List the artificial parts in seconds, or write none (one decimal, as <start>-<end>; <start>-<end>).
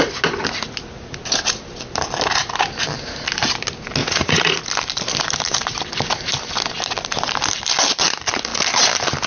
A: 4.0-4.6